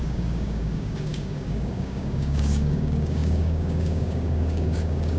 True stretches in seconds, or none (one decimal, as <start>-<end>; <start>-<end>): none